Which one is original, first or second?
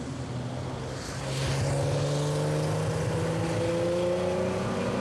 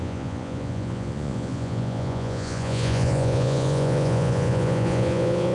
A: first